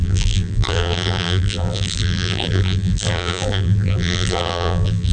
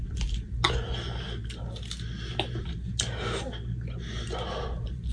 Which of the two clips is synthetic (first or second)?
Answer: first